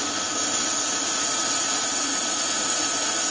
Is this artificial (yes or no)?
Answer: yes